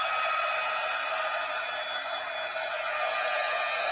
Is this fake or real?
real